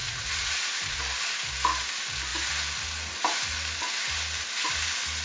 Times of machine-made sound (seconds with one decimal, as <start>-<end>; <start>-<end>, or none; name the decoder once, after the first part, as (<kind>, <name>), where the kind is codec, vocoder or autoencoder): 0.0-1.0 (vocoder, Vocos)